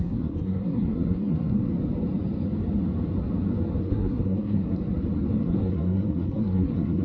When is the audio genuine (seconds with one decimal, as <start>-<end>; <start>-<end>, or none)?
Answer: 1.7-3.8; 4.8-5.3

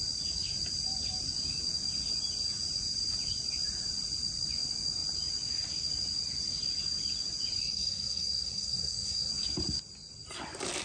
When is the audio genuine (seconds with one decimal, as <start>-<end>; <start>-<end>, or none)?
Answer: 0.0-7.6; 9.3-10.8

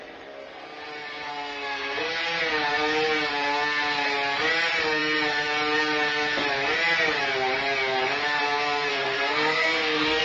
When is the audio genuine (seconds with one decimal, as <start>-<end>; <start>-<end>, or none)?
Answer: 0.0-1.3; 2.1-8.9

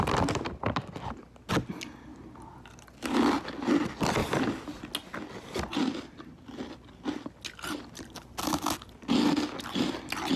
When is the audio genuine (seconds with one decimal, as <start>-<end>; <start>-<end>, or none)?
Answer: 0.0-10.4